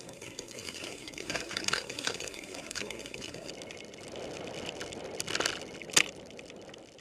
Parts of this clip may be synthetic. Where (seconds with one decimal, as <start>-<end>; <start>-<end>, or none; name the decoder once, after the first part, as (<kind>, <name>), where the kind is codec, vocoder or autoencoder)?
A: 0.0-3.5 (codec, SNAC)